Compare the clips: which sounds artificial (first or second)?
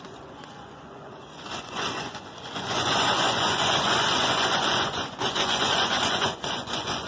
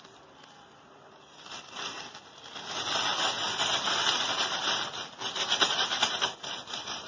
first